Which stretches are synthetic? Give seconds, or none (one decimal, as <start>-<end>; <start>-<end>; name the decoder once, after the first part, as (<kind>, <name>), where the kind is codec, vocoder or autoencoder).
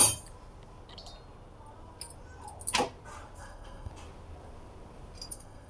3.4-3.9 (codec, SNAC); 5.3-5.7